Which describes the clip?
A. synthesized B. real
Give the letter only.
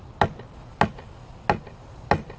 B